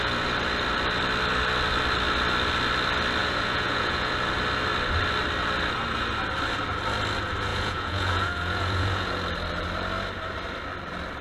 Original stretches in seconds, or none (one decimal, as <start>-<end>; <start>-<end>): 0.0-3.2; 4.1-7.5; 9.1-11.2